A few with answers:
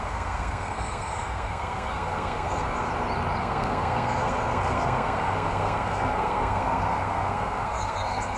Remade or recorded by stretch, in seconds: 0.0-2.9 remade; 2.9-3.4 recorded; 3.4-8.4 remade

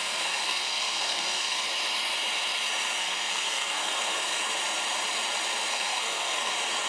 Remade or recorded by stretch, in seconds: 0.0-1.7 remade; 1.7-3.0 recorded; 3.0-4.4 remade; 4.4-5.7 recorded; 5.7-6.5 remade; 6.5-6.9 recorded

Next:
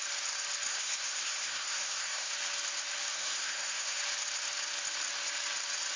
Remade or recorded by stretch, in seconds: 0.0-0.7 recorded; 0.7-2.3 remade; 2.3-3.1 recorded; 3.1-4.0 remade; 4.0-6.0 recorded

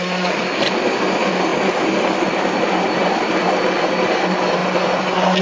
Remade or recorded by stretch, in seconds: 0.0-5.4 recorded

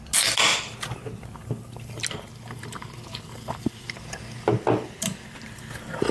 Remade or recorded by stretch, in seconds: 0.0-6.1 recorded